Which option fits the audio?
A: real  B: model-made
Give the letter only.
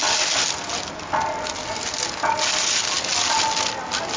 A